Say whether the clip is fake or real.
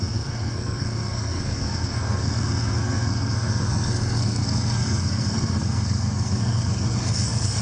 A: fake